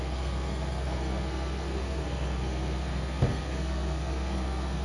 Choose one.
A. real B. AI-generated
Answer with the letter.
B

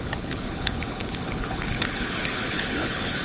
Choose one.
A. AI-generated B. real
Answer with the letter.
A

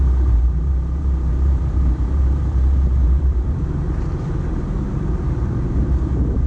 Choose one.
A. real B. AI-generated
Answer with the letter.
B